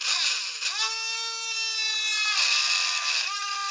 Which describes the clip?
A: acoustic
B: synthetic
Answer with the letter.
A